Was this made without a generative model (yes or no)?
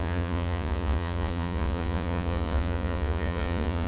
no